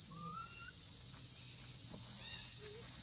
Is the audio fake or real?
fake